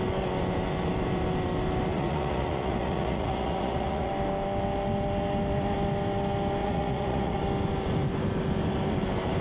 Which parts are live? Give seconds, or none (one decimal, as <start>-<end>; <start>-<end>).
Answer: 0.0-1.9; 4.1-6.6; 7.4-9.4